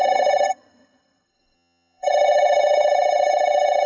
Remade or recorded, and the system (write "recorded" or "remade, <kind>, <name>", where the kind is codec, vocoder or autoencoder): remade, vocoder, HiFi-GAN